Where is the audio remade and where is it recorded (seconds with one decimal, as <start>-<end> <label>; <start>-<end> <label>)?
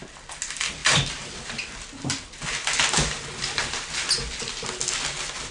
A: 0.0-5.5 recorded